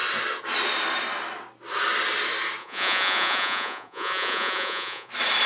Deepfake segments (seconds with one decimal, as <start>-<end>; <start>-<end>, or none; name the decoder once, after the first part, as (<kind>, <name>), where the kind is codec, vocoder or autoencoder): 2.6-5.1 (vocoder, Vocos)

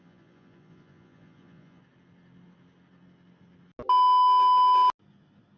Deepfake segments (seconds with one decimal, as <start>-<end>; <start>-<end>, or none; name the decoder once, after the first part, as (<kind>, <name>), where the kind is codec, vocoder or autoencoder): 0.0-1.8 (vocoder, Vocos)

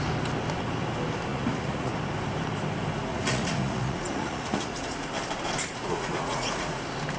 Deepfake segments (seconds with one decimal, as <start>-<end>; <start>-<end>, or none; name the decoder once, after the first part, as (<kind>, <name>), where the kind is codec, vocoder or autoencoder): 1.3-1.9 (vocoder, Vocos); 3.1-5.1; 5.8-6.8

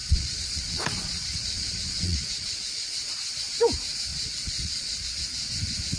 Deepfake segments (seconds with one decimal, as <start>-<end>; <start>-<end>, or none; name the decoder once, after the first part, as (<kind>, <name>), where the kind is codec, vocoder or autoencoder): 0.0-3.1 (vocoder, Vocos); 4.1-5.1